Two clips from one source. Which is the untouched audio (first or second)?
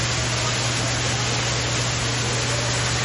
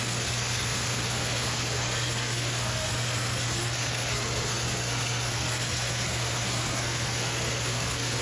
first